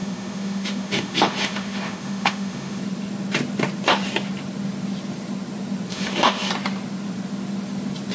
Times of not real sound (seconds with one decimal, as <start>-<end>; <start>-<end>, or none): 0.0-2.8; 5.9-6.5

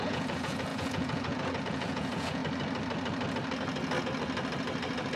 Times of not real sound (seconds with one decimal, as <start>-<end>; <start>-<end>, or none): 0.0-2.4

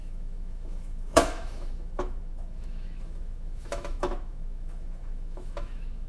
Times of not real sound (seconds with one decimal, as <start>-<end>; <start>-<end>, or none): 0.0-6.1

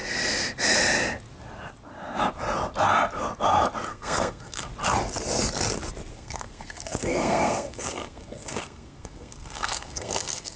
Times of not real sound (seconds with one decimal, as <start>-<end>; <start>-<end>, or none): 3.9-4.7; 6.1-10.6